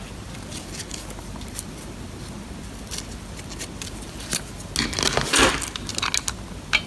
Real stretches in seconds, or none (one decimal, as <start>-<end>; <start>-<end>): 0.0-6.9